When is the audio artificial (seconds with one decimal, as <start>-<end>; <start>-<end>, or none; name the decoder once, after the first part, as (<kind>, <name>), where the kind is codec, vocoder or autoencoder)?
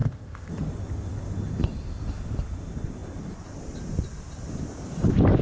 0.0-0.5 (codec, ZipCodec)